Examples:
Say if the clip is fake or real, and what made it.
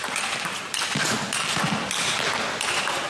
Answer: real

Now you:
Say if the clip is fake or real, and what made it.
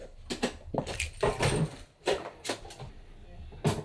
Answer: real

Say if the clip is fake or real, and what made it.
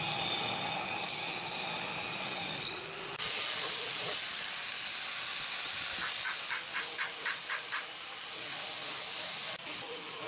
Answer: real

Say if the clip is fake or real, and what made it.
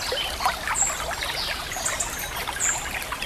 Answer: real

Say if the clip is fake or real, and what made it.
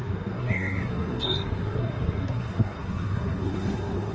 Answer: fake, codec, SNAC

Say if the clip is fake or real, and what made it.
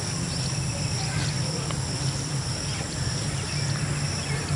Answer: real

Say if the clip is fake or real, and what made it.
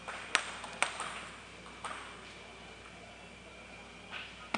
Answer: real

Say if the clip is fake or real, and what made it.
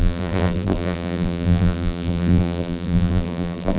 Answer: fake, vocoder, BigVGAN v2